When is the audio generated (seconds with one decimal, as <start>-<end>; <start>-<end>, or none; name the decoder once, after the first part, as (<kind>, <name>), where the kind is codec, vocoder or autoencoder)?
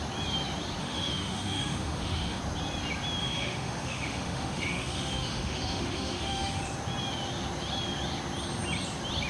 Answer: 0.8-2.4 (autoencoder, DAC-VAE); 3.2-6.6